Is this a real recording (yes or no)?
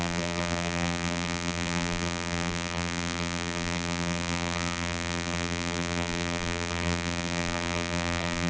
no